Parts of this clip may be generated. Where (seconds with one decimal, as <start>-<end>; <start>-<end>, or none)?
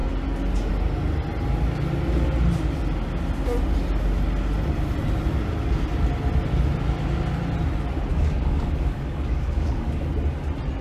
8.1-10.1